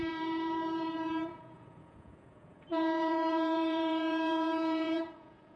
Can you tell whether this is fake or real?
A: fake